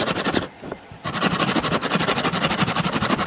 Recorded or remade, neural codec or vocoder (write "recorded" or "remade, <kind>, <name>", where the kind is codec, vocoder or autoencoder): recorded